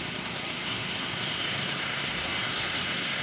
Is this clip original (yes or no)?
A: no